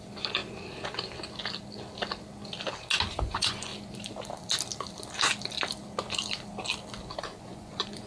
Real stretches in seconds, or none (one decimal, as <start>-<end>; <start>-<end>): 0.4-3.1; 3.7-7.2

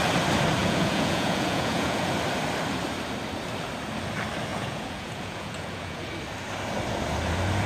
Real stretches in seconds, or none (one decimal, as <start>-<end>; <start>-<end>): 0.0-0.6; 2.1-4.5; 6.1-7.7

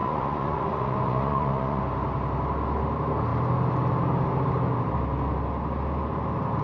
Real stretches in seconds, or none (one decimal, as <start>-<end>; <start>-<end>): 1.8-6.6

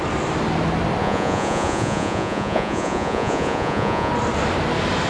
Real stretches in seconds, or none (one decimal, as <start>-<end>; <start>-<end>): 0.0-1.0; 4.1-5.1

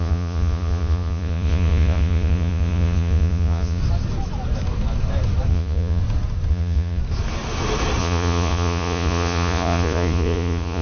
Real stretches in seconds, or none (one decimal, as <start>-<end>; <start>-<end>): 3.8-5.5; 6.0-6.5; 7.0-8.0

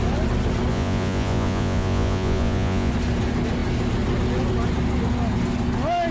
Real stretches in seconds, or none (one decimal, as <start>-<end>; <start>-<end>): 0.0-0.7; 2.9-6.1